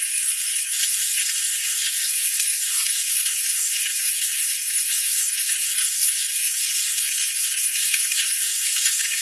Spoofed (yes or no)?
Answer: yes